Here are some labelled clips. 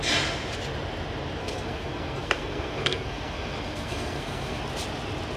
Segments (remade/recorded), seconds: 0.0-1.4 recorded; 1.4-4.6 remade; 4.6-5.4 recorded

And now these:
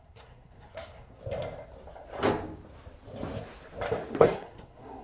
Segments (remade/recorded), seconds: 0.0-1.2 remade; 1.2-4.2 recorded; 4.2-5.0 remade